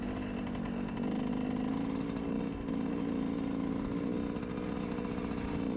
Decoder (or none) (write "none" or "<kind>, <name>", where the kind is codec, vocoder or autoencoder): none